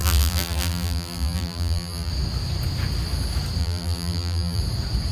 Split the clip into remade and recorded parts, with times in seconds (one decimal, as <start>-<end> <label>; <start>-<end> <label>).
0.0-2.1 remade; 2.1-3.6 recorded; 3.6-4.6 remade; 4.6-5.1 recorded